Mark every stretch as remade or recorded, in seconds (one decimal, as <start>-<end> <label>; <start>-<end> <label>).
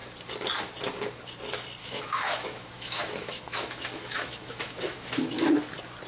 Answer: 0.0-1.8 recorded; 1.8-5.5 remade; 5.5-6.1 recorded